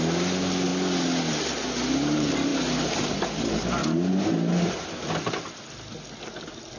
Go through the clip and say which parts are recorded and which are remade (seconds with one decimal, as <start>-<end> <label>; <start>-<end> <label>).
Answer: 0.0-6.8 recorded